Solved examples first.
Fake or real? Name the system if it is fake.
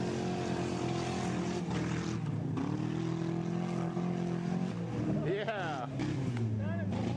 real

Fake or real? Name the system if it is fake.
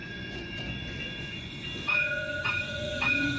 fake, vocoder, Vocos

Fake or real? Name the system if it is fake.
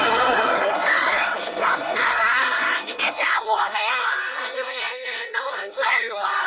fake, codec, SNAC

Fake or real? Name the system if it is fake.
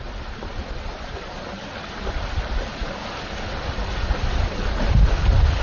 real